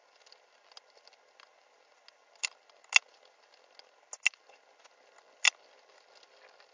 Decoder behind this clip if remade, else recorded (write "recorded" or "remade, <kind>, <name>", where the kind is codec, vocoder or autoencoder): recorded